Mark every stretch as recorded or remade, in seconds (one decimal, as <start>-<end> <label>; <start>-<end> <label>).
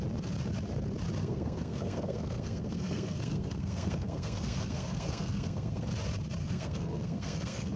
0.0-1.2 recorded; 1.2-5.9 remade; 5.9-6.4 recorded; 6.4-7.8 remade